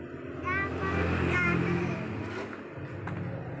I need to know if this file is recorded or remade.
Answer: recorded